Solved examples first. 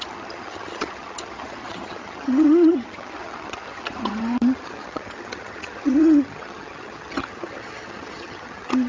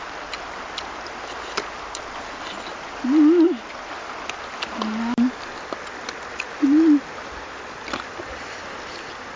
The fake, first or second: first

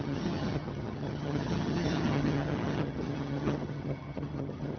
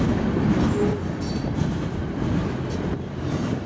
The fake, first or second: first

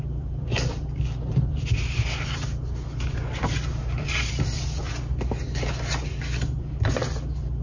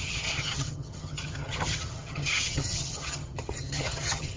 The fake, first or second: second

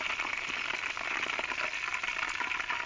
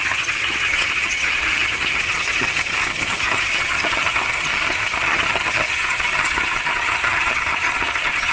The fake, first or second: second